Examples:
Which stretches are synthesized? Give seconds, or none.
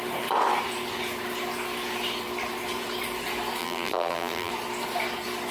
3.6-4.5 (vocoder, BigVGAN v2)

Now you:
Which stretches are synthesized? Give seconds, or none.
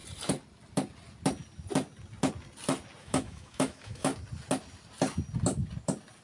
3.0-4.1 (autoencoder, DAC-VAE)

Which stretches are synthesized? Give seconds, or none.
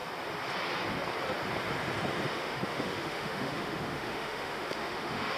2.3-5.4 (autoencoder, DAC-VAE)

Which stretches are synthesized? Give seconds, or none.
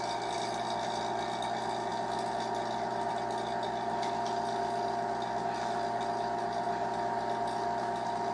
none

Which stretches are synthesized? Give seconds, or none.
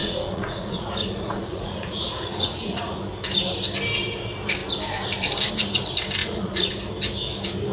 0.0-3.0 (vocoder, Vocos); 6.2-6.7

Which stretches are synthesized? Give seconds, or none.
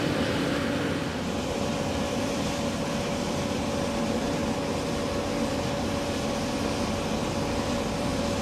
0.0-4.4 (vocoder, BigVGAN v2); 7.2-8.4